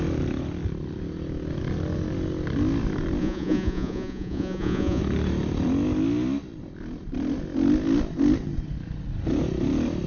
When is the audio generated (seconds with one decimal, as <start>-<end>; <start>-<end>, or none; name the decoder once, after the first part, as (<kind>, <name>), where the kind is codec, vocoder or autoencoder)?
3.2-5.0 (vocoder, Vocos)